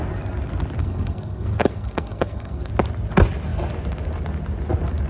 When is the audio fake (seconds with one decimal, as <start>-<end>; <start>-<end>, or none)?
0.8-2.7

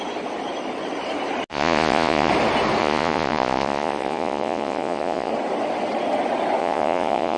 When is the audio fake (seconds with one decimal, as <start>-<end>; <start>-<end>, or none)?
1.5-2.3; 2.8-5.3; 6.6-7.4

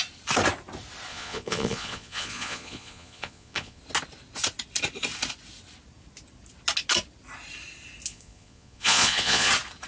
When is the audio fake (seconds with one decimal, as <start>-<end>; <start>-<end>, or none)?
1.1-3.8; 8.1-9.5

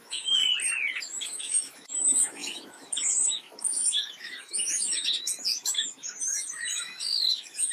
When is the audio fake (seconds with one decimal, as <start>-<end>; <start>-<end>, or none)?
0.0-0.4; 1.0-7.7